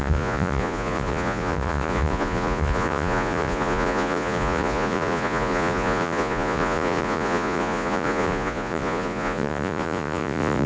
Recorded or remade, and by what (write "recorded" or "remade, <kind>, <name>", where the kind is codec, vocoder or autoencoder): remade, vocoder, Vocos